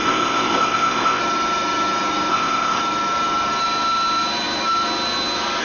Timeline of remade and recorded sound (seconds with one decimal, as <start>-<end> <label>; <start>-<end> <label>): 0.0-1.2 remade; 1.2-2.3 recorded; 2.3-2.8 remade; 2.8-5.6 recorded